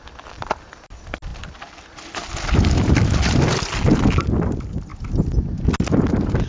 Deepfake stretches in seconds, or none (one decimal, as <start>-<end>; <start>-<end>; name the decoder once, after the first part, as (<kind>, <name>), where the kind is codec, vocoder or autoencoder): none